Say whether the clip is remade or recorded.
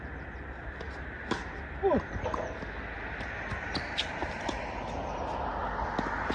recorded